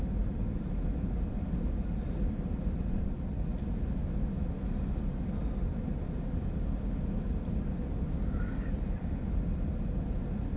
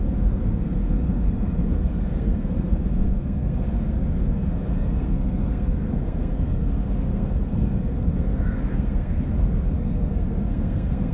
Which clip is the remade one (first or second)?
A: second